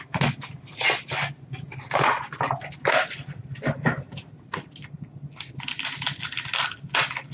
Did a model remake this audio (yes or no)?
no